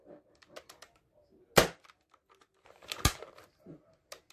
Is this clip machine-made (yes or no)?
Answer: no